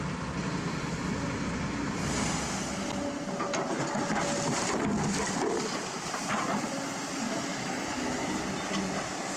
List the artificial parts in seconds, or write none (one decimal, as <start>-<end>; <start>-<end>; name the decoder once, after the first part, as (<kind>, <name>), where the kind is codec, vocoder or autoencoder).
7.5-8.3 (autoencoder, DAC-VAE)